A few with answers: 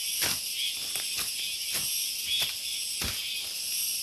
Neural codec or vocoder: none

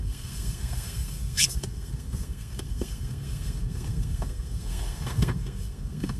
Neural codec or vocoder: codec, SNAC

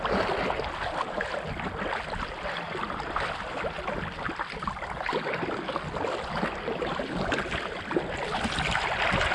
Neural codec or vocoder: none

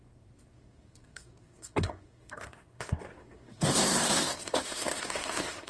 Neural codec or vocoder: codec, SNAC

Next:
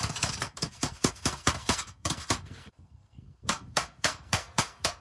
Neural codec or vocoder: codec, SNAC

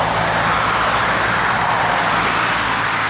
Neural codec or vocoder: none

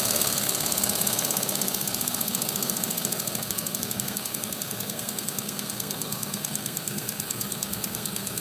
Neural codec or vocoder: codec, SNAC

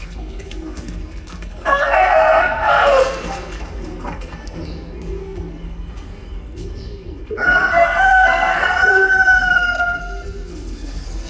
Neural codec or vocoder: codec, SNAC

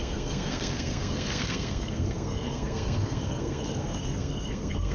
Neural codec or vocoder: codec, SNAC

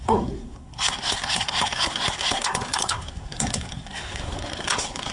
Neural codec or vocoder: codec, SNAC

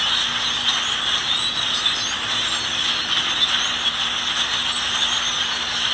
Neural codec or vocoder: none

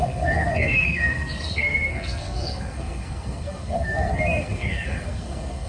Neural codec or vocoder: codec, SNAC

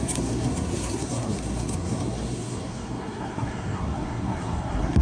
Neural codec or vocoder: codec, SNAC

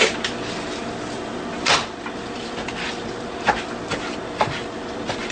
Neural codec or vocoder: none